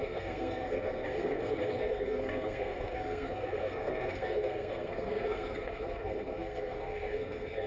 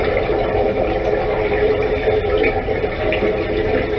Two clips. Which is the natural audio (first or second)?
second